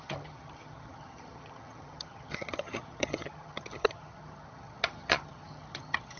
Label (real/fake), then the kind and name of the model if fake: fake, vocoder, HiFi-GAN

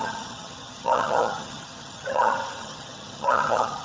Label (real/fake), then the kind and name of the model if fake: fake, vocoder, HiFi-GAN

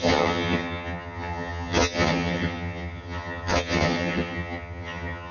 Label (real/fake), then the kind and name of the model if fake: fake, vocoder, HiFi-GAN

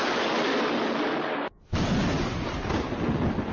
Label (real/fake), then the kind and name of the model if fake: real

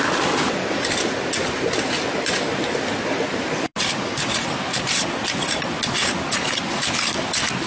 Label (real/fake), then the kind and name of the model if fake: real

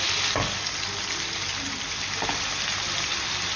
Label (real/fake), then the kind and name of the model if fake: real